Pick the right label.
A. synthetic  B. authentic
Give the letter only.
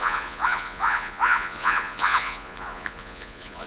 A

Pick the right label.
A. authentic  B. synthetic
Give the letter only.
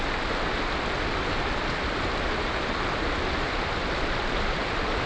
A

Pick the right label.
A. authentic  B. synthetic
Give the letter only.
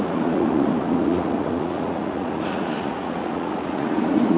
B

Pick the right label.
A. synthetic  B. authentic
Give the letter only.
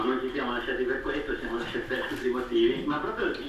B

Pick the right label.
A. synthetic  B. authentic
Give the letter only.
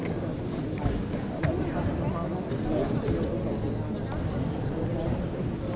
B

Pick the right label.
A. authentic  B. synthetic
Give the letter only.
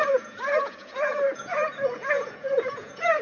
B